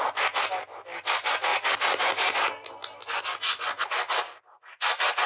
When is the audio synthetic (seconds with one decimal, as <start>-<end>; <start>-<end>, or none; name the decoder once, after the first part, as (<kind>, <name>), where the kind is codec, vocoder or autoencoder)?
none